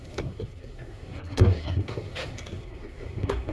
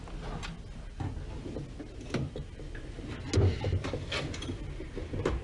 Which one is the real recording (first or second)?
second